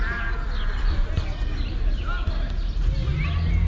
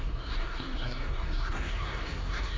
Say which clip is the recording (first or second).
first